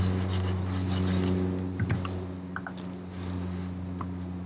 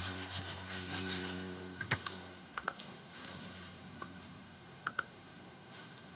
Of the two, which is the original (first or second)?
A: first